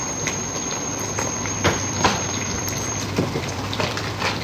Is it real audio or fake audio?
fake